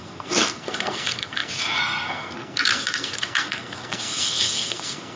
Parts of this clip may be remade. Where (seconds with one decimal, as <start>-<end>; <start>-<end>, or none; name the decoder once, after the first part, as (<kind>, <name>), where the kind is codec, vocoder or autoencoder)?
0.0-5.2 (codec, SNAC)